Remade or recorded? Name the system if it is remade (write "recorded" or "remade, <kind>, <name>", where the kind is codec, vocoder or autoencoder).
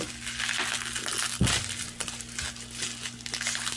recorded